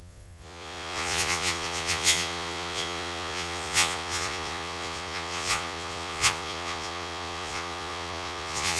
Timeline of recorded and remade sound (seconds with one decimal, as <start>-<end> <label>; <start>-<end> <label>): 0.0-8.8 remade